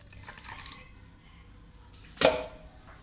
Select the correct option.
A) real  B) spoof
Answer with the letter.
A